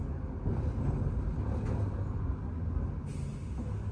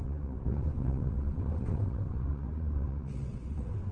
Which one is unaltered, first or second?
first